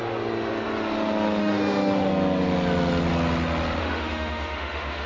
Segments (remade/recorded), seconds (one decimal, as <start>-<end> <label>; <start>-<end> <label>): 0.0-1.4 recorded; 1.4-2.1 remade; 2.1-3.8 recorded; 3.8-5.1 remade